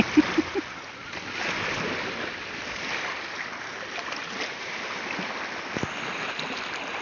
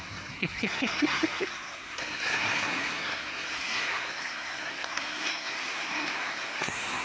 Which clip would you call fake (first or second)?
second